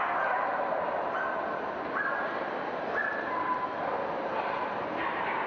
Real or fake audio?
real